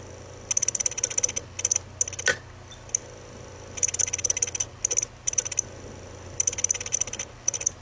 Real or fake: real